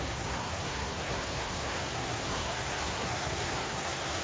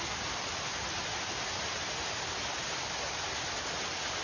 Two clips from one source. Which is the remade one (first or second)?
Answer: first